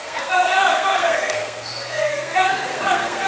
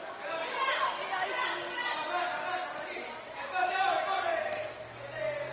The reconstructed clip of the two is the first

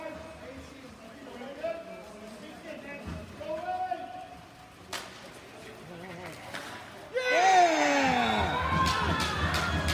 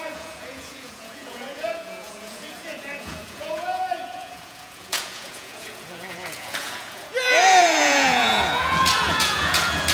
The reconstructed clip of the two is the second